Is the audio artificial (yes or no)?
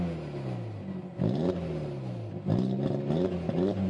no